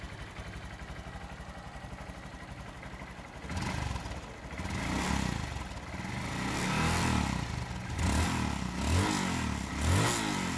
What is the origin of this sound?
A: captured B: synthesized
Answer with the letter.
A